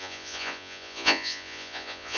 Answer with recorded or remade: remade